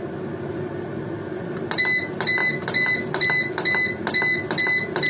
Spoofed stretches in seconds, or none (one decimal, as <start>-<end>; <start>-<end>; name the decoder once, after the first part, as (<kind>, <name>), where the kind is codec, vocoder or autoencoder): none